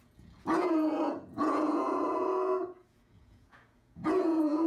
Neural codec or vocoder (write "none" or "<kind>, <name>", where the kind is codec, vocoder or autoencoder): vocoder, Vocos